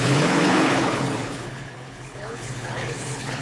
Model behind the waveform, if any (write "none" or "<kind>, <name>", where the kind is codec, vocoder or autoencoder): codec, HILCodec